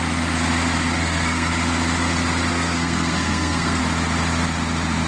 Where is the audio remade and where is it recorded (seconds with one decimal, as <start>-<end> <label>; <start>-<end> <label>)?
0.0-1.0 recorded; 1.0-1.5 remade; 1.5-2.5 recorded; 2.5-3.8 remade; 3.8-5.1 recorded